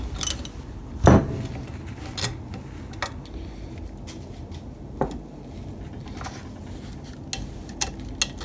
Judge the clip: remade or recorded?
recorded